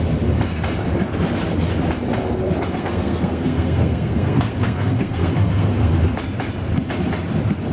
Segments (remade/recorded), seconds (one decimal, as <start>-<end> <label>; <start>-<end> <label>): 0.0-2.7 recorded; 2.7-5.9 remade; 5.9-7.7 recorded